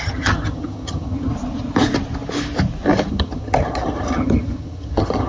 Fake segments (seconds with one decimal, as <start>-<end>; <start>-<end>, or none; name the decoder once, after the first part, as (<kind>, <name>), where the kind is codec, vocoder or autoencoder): 0.0-1.3 (vocoder, HiFi-GAN); 3.1-5.3

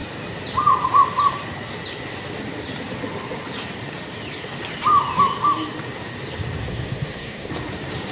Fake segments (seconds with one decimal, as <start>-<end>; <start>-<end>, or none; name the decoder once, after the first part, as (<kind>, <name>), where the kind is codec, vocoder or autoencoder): 6.7-7.5 (codec, SNAC)